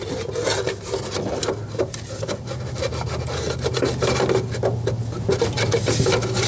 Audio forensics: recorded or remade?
recorded